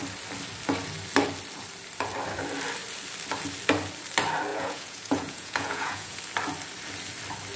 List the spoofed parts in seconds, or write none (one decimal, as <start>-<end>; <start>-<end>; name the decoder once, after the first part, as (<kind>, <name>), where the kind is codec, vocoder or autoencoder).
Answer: 4.5-6.2 (vocoder, Vocos)